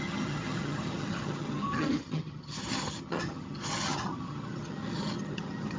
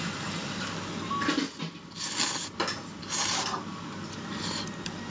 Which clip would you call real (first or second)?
second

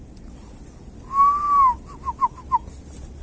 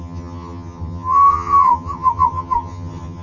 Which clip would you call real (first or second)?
first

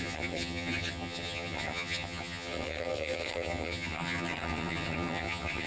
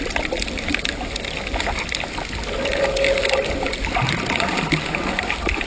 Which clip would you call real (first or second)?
second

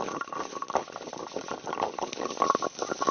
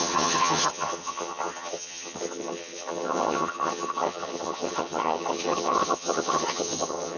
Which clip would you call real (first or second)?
first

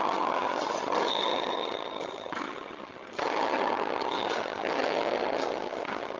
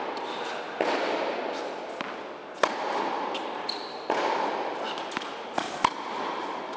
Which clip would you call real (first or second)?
second